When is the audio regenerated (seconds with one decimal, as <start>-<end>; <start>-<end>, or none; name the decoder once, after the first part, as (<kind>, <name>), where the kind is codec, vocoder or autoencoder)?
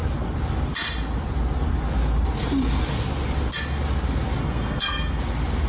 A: 4.4-5.2 (codec, SNAC)